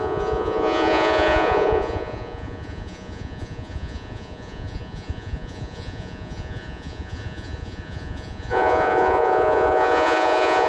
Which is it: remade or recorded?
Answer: remade